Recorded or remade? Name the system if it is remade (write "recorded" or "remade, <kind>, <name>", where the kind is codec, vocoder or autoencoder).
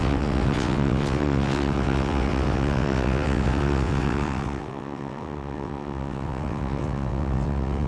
remade, vocoder, WaveNeXt